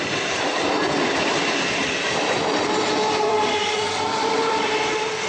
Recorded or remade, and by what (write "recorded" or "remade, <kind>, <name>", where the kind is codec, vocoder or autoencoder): remade, vocoder, BigVGAN v2